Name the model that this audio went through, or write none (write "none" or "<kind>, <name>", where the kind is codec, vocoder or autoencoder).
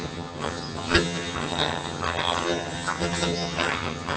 vocoder, HiFi-GAN